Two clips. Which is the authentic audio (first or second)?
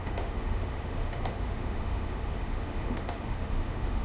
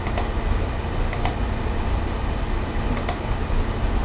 second